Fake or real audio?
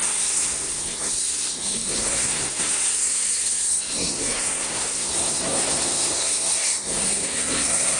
fake